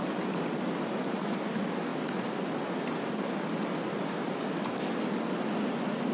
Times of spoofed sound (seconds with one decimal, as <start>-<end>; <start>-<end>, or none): none